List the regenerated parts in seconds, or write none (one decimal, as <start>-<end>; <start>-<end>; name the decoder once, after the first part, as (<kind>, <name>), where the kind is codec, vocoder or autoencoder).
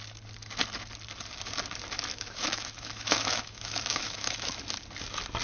2.1-4.6 (autoencoder, DAC-VAE)